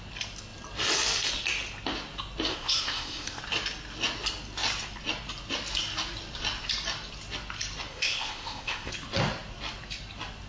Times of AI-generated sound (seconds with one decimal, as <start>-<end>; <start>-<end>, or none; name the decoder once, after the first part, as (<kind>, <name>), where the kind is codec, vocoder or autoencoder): 2.5-3.4 (codec, ZipCodec); 7.9-8.9